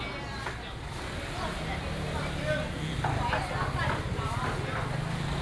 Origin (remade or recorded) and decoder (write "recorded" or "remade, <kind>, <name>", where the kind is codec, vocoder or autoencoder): recorded